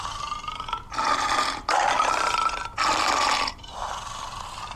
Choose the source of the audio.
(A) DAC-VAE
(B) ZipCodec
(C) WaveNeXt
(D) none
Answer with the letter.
D